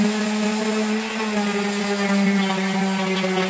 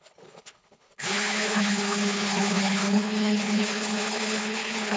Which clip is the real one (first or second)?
first